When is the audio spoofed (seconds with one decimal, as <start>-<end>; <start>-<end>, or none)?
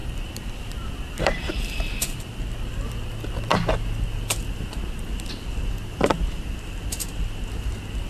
0.0-2.9